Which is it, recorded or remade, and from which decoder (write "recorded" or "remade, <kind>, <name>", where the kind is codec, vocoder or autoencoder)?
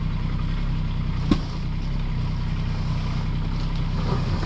recorded